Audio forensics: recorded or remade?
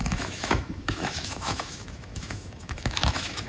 remade